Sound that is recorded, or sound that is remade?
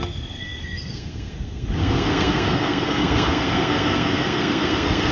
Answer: remade